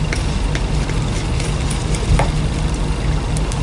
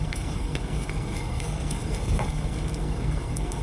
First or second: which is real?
first